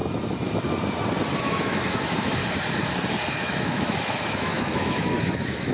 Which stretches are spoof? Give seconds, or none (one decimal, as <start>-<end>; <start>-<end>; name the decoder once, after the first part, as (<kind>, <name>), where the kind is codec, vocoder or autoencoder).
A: 1.4-2.4 (autoencoder, DAC-VAE); 3.3-5.7